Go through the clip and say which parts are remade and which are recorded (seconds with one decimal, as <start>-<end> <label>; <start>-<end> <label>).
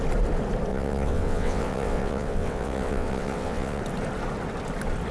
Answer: 0.0-0.7 recorded; 0.7-3.8 remade; 3.8-5.1 recorded